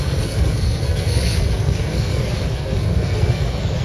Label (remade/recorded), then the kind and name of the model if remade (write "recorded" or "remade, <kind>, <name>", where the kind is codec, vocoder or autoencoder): remade, codec, SNAC